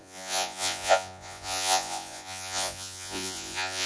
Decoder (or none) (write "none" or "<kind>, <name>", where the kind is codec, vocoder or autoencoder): vocoder, Vocos